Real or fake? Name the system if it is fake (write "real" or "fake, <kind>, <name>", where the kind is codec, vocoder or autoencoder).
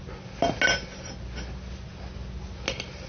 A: real